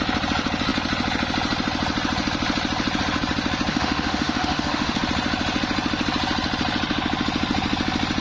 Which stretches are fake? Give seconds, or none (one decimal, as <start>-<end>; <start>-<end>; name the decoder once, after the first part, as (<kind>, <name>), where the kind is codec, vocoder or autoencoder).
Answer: 3.7-5.0 (autoencoder, DAC-VAE)

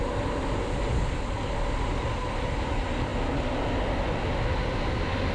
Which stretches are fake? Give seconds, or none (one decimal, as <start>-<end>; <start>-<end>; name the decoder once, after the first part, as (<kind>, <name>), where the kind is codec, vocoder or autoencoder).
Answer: none

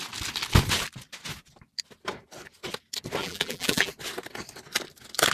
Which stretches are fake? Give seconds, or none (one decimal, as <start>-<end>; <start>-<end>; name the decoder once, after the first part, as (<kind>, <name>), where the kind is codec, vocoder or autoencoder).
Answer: 3.2-3.9 (vocoder, BigVGAN v2)

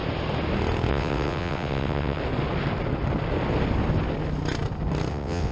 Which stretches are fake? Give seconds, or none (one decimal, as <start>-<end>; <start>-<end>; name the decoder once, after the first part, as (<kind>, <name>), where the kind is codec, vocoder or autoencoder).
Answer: 0.9-2.2 (vocoder, WaveNeXt); 5.1-5.5

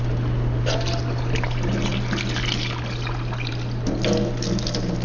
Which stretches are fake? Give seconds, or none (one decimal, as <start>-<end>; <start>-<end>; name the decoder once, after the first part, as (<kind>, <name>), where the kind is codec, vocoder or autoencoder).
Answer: none

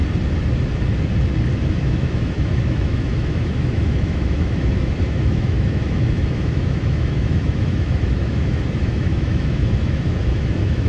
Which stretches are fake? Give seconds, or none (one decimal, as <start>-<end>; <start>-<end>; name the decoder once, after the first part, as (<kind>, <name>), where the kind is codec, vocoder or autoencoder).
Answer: 1.6-10.9 (autoencoder, DAC-VAE)

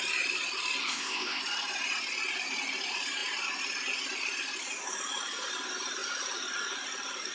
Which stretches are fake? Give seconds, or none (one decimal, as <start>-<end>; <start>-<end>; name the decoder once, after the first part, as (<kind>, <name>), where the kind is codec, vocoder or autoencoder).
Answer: 0.8-1.4 (codec, ZipCodec)